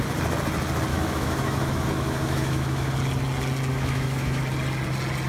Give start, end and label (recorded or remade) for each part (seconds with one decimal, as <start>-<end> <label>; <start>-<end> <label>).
0.0-0.9 recorded; 0.9-2.9 remade; 2.9-3.7 recorded; 3.7-4.4 remade; 4.4-5.3 recorded